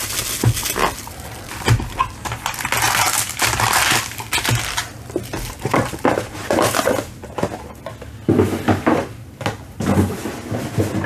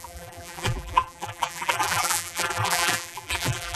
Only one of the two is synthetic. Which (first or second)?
second